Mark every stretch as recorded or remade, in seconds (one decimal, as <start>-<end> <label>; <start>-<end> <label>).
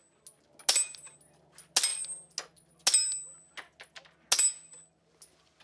0.0-5.6 recorded